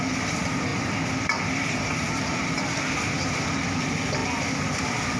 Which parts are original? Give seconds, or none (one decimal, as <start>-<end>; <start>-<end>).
0.0-5.2